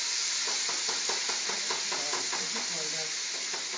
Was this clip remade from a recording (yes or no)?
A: no